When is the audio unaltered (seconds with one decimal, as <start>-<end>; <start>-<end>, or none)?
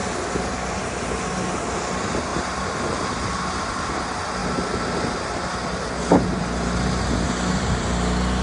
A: 0.0-0.8; 4.4-7.5